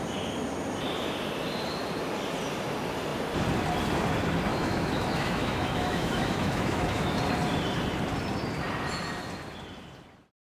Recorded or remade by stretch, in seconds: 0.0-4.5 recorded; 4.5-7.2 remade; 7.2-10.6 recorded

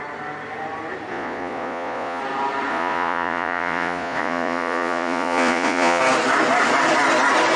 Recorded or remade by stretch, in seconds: 0.0-1.1 recorded; 1.1-2.2 remade; 2.2-2.7 recorded; 2.7-6.0 remade; 6.0-7.6 recorded